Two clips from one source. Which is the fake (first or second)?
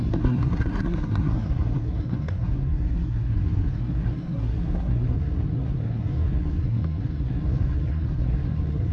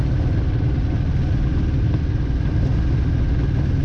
first